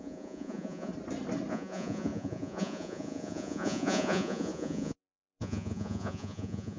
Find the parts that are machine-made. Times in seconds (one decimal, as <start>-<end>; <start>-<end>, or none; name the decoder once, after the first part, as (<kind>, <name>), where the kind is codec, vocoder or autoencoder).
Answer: 0.0-0.9 (vocoder, Vocos); 1.5-6.8